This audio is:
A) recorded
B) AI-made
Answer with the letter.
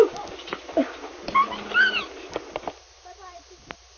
A